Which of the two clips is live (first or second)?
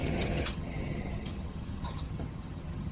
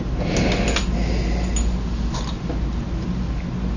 second